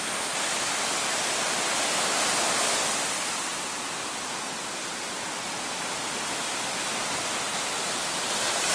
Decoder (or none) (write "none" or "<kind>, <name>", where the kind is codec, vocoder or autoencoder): none